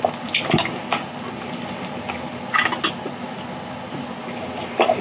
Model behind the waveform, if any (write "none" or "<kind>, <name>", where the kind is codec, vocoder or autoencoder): none